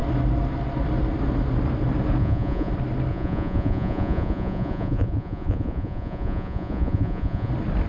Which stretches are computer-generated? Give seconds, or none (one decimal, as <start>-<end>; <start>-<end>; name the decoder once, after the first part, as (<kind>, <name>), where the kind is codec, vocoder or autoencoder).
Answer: 2.2-2.7 (vocoder, Vocos); 3.1-7.5